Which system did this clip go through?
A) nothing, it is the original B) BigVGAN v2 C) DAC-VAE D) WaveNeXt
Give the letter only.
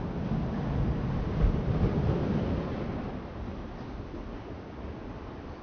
A